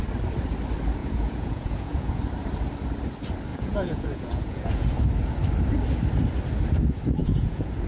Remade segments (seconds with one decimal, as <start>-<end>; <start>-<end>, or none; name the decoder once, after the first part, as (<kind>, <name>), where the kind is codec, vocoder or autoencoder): 1.0-2.2 (vocoder, Vocos); 3.5-4.9; 7.2-7.9